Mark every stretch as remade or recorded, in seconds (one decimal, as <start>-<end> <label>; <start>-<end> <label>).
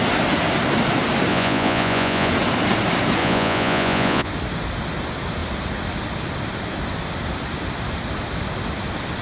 0.0-1.3 recorded; 1.3-2.3 remade; 2.3-3.2 recorded; 3.2-4.3 remade; 4.3-9.2 recorded